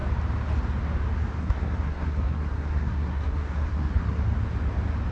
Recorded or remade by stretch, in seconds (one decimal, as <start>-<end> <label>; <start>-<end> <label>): 0.0-1.4 recorded; 1.4-4.2 remade; 4.2-5.1 recorded